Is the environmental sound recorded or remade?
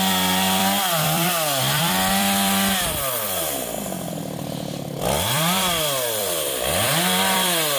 remade